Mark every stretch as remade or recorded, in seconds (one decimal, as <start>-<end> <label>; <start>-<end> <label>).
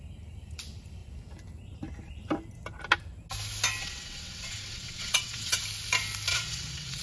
0.0-3.8 recorded; 3.8-5.6 remade; 5.6-6.3 recorded; 6.3-7.0 remade